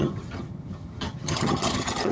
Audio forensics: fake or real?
fake